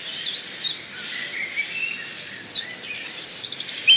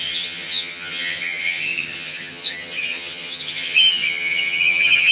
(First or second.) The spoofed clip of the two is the second